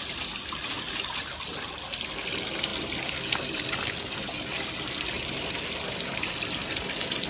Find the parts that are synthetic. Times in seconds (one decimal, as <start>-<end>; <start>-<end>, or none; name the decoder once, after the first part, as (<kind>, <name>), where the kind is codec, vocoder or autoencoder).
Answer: none